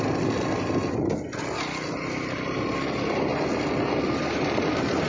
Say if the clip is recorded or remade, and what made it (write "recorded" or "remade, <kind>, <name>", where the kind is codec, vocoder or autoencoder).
recorded